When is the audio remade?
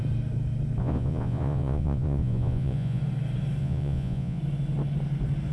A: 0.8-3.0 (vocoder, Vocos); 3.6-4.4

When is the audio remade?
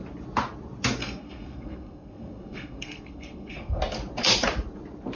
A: 1.0-3.8 (codec, SNAC)